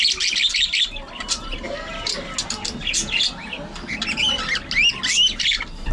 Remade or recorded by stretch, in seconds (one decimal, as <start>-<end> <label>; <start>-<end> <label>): 0.0-5.9 recorded